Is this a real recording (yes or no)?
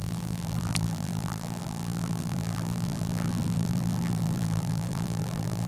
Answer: no